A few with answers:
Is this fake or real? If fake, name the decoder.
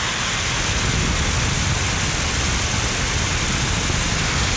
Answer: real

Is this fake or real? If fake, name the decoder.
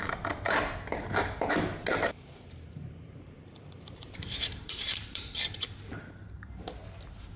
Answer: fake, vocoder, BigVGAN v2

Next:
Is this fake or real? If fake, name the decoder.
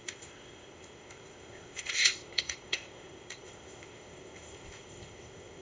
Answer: fake, codec, ZipCodec